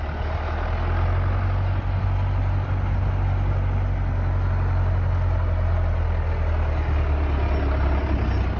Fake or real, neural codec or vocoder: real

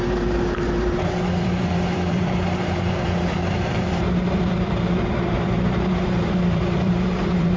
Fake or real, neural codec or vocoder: fake, vocoder, BigVGAN v2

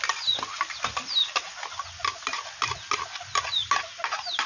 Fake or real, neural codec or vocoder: real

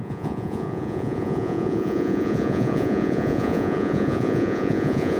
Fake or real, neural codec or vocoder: fake, vocoder, Vocos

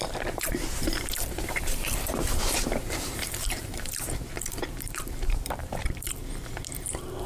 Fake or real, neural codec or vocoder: fake, vocoder, BigVGAN v2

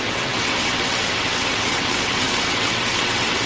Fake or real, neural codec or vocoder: fake, vocoder, WaveNeXt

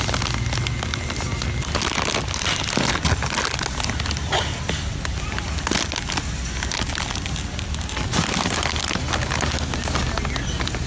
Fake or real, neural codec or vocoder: real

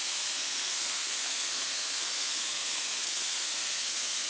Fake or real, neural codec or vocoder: fake, codec, SNAC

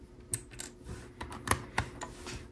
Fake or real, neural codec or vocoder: real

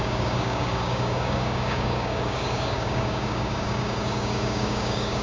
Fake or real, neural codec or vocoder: fake, codec, DAC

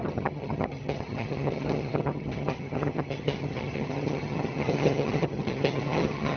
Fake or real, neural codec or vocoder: fake, vocoder, HiFi-GAN